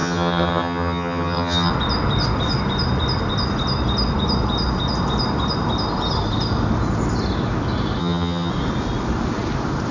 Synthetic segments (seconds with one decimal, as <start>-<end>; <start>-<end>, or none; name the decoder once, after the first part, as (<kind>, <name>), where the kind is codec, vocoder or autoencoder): 0.0-1.7 (vocoder, HiFi-GAN); 8.0-8.5